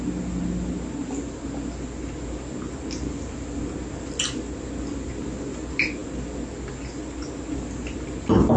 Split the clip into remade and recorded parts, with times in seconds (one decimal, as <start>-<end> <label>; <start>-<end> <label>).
0.0-8.6 recorded